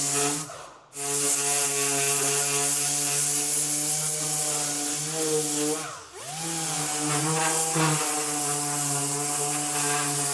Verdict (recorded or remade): recorded